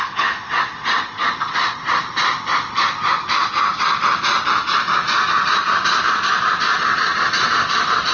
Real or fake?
fake